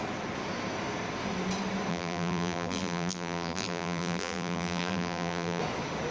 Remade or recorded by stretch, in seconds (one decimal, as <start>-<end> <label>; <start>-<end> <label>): 0.0-1.9 recorded; 1.9-5.6 remade; 5.6-6.1 recorded

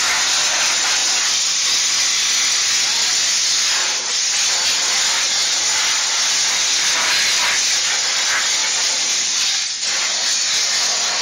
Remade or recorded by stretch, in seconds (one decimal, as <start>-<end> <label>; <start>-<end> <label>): 0.0-11.2 recorded

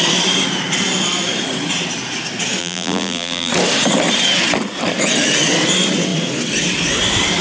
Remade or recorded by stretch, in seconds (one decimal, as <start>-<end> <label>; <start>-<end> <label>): 0.0-2.6 recorded; 2.6-3.5 remade; 3.5-7.4 recorded

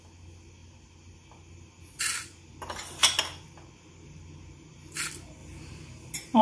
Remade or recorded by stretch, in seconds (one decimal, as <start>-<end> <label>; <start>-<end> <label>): 0.0-6.4 recorded

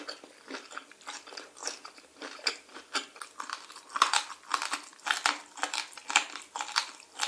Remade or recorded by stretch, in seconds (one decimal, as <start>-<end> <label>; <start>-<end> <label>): 0.0-1.6 recorded; 1.6-2.8 remade; 2.8-7.3 recorded

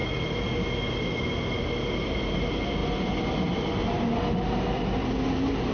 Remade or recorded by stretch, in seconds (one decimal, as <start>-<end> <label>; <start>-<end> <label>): 0.0-5.7 recorded